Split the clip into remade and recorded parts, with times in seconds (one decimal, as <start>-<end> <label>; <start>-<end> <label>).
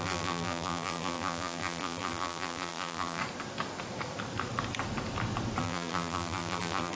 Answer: 0.0-3.2 remade; 3.2-5.6 recorded; 5.6-6.9 remade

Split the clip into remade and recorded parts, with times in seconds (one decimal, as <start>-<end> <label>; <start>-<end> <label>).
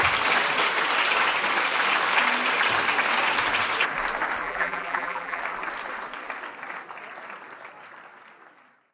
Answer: 0.0-4.4 recorded; 4.4-5.4 remade; 5.4-8.9 recorded